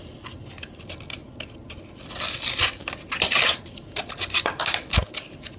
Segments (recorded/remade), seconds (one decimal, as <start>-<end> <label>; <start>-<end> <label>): 0.0-5.6 recorded